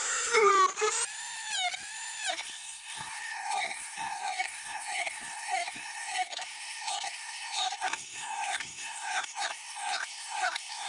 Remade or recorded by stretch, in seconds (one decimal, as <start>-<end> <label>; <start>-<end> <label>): 0.0-0.5 remade; 0.5-2.3 recorded; 2.3-10.9 remade